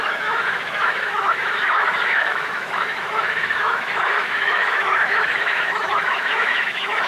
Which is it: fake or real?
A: fake